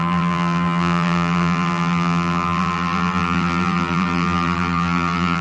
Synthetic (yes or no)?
yes